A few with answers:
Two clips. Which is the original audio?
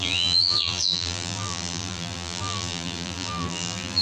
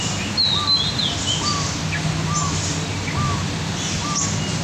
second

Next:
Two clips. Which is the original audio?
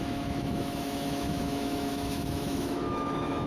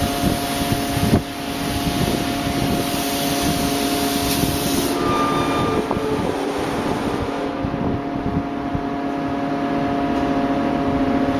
second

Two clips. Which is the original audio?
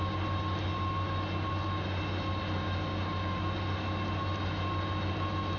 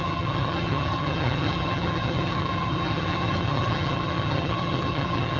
first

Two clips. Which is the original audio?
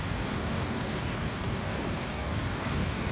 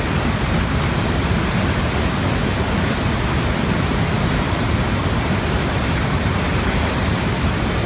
second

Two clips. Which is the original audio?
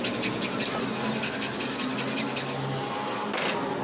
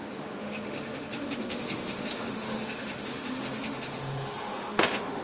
first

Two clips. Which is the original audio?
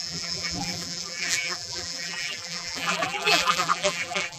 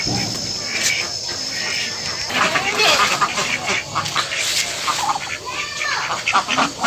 second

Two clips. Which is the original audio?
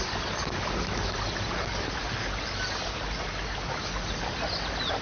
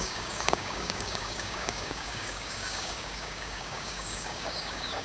first